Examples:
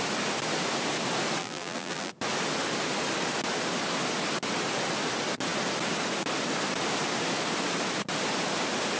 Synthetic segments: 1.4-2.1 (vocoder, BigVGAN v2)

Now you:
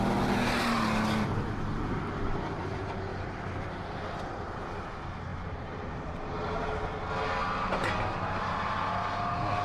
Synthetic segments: 5.3-6.7 (vocoder, BigVGAN v2)

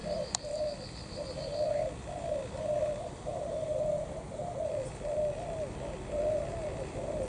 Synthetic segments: 0.0-7.3 (vocoder, BigVGAN v2)

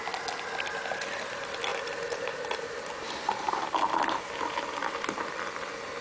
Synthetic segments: 1.7-5.3 (vocoder, BigVGAN v2)

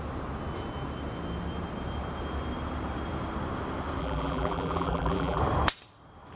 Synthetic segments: 4.0-5.4 (vocoder, BigVGAN v2)

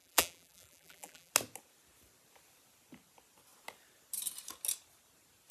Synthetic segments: 0.0-1.3 (vocoder, BigVGAN v2)